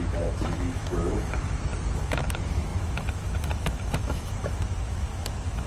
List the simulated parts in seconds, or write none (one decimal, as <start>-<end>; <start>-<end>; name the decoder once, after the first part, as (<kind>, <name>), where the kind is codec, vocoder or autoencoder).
0.0-5.7 (autoencoder, DAC-VAE)

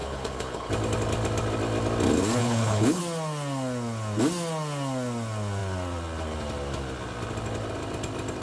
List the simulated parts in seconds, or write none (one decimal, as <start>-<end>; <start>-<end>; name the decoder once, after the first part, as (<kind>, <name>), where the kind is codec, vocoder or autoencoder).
0.0-0.7 (codec, HILCodec); 2.4-3.0

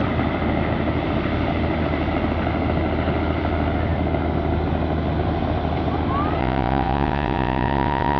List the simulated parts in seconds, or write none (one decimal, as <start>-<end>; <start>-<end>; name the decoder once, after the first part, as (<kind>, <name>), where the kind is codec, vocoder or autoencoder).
6.4-8.2 (vocoder, WaveNeXt)

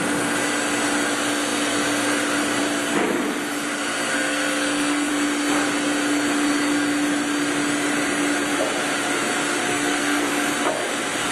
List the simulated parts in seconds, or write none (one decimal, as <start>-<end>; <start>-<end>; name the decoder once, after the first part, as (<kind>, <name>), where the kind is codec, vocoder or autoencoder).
4.1-5.1 (codec, SNAC); 9.6-10.3

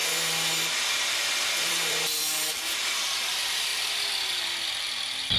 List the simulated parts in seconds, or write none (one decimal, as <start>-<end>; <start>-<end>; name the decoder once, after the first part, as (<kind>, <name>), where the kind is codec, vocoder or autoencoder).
1.6-3.7 (vocoder, BigVGAN v2); 4.3-5.4

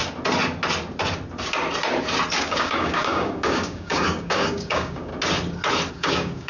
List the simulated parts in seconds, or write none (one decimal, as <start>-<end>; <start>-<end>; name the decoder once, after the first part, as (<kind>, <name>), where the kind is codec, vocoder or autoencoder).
2.4-5.1 (codec, DAC); 5.9-6.5